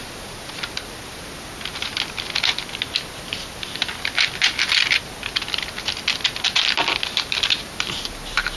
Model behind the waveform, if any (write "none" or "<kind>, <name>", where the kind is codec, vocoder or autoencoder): none